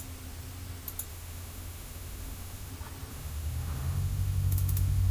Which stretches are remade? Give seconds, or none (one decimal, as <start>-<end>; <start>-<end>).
1.1-2.7; 3.1-5.1